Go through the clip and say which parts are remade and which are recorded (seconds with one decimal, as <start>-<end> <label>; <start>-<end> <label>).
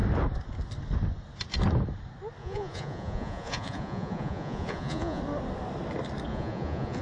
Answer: 0.0-2.4 recorded; 2.4-5.2 remade; 5.2-6.3 recorded; 6.3-7.0 remade